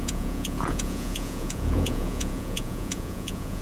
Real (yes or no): no